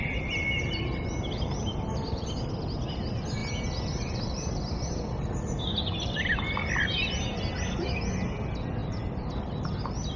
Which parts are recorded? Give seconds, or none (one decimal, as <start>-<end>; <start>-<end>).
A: 0.0-10.2